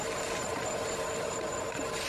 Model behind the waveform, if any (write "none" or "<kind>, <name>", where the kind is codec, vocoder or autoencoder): none